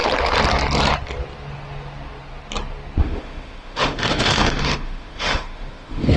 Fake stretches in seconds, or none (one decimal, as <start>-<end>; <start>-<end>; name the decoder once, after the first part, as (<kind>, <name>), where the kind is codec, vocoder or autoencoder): 3.0-6.2 (autoencoder, DAC-VAE)